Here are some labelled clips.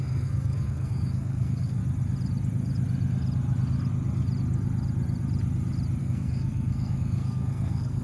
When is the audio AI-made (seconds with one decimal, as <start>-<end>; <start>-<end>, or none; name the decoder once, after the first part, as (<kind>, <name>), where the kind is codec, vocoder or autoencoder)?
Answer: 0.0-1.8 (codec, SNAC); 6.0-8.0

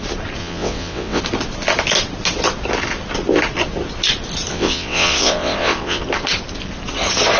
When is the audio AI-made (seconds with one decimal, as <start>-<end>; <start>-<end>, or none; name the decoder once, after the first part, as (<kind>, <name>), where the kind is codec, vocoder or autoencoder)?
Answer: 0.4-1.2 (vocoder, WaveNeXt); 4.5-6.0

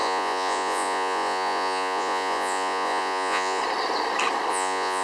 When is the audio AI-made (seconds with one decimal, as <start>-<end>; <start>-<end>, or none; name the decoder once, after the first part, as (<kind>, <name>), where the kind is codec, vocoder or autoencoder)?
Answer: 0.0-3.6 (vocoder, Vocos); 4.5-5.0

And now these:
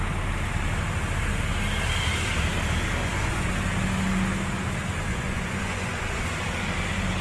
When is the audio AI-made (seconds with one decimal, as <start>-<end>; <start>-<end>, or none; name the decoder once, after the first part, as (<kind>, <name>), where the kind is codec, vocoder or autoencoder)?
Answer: 3.0-3.5 (vocoder, Vocos); 5.1-6.2

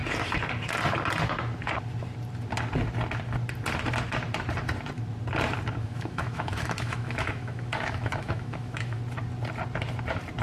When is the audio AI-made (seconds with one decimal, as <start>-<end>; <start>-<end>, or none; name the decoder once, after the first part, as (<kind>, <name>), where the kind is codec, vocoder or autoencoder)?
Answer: 5.8-9.0 (autoencoder, DAC-VAE)